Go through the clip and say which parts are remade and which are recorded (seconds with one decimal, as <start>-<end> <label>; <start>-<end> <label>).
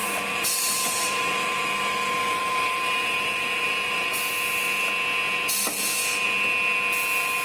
0.0-4.1 remade; 4.1-7.4 recorded